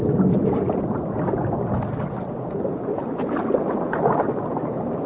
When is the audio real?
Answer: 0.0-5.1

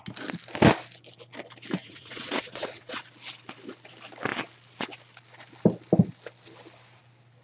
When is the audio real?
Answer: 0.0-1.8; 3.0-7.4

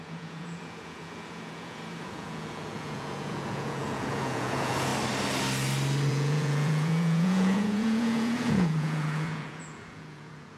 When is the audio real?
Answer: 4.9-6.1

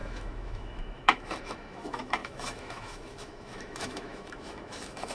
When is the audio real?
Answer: none

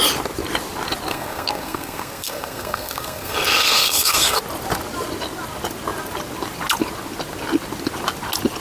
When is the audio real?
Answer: 0.0-1.1; 4.4-8.6

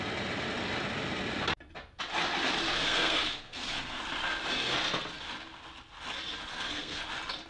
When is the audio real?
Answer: 0.0-2.7; 4.0-6.5; 7.0-7.5

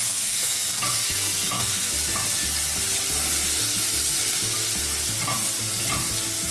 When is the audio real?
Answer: 1.9-6.5